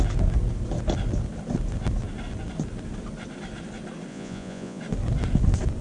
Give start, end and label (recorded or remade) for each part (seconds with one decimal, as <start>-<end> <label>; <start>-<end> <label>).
0.0-4.1 recorded; 4.1-4.8 remade; 4.8-5.8 recorded